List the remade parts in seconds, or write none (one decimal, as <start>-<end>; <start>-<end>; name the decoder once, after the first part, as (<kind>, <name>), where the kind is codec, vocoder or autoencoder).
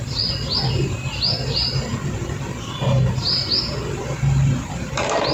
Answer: none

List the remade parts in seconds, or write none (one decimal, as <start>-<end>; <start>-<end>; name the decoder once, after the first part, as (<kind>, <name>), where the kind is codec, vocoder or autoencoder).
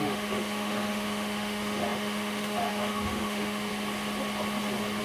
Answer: 0.0-3.7 (autoencoder, DAC-VAE)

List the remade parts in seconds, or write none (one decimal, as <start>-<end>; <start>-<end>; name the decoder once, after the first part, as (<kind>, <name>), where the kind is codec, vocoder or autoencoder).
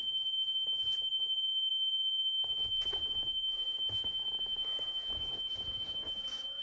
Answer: 0.0-6.6 (vocoder, BigVGAN v2)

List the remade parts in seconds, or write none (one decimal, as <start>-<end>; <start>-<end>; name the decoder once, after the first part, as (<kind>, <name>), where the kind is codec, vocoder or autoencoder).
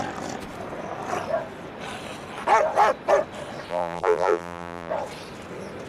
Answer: 3.7-4.9 (vocoder, BigVGAN v2)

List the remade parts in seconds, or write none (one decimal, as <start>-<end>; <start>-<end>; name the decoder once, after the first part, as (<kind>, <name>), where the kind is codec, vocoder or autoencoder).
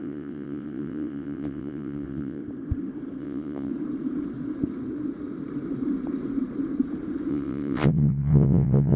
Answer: 0.0-2.4 (vocoder, WaveNeXt); 3.2-3.7; 7.3-9.0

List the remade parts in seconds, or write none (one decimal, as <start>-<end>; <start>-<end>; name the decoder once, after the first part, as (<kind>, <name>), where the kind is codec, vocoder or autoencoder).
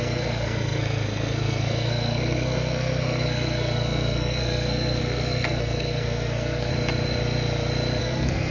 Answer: 0.0-6.7 (codec, SNAC); 8.0-8.5